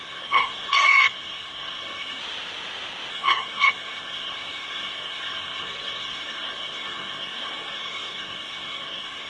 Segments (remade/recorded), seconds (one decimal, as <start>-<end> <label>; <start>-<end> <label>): 0.0-2.2 remade; 2.2-3.1 recorded; 3.1-9.3 remade